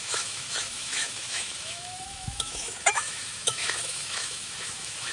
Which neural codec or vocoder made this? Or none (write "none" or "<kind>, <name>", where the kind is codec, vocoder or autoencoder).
autoencoder, DAC-VAE